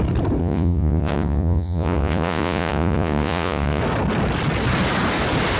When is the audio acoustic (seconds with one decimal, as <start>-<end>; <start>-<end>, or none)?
0.0-0.4; 3.8-5.6